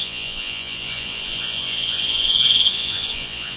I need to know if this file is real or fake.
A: fake